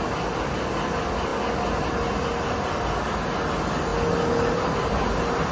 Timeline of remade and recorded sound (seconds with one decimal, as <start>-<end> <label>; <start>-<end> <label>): 0.0-5.5 recorded